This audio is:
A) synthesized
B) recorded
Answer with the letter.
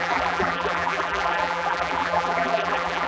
A